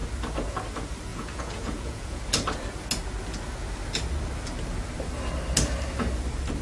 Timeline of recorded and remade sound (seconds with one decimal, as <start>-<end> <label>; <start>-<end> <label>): 0.0-1.1 recorded; 1.1-2.2 remade; 2.2-6.6 recorded